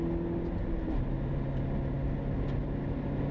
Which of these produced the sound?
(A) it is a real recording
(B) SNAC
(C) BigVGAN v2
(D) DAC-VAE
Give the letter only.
A